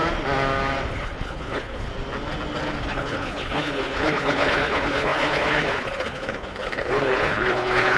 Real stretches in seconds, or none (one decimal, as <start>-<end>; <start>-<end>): 0.0-0.9; 1.9-2.8